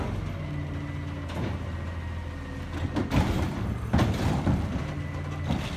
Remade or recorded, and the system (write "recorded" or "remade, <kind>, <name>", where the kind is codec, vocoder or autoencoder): recorded